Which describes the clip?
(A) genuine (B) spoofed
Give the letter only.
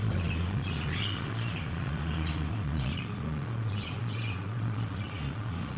B